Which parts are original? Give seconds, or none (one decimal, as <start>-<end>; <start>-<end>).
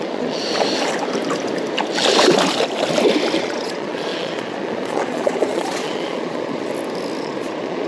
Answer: 0.4-3.4; 6.7-7.2